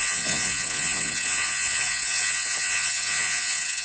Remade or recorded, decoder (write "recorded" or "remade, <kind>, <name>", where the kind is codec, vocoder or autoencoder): remade, vocoder, Vocos